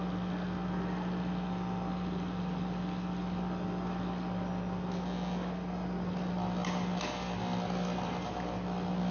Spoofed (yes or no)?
no